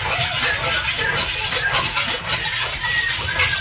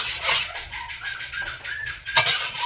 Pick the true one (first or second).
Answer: first